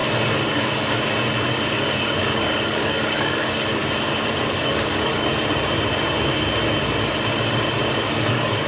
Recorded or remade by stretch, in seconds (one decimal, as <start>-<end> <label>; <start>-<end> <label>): 0.0-1.5 recorded; 1.5-3.8 remade; 3.8-4.4 recorded; 4.4-5.3 remade; 5.3-8.1 recorded; 8.1-8.7 remade